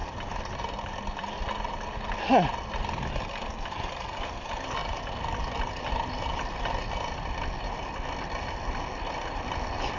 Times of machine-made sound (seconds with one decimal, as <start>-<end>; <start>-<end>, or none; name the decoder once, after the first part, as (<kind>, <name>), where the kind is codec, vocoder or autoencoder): none